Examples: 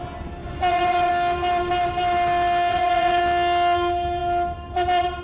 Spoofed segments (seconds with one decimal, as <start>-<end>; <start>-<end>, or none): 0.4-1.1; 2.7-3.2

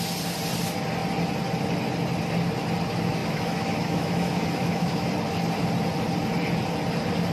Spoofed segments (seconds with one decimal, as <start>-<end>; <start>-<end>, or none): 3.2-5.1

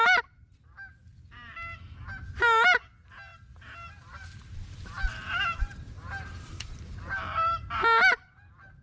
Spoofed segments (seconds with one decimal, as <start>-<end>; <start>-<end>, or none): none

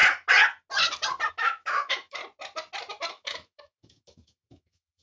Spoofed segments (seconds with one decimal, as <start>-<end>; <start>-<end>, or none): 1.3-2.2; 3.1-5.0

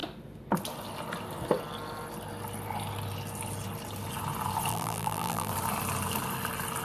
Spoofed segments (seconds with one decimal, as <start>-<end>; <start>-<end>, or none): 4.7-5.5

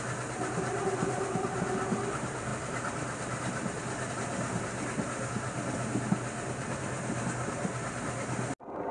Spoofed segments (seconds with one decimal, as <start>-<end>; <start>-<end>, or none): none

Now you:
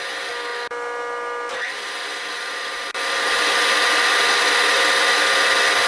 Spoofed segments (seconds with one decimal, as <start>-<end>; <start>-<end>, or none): none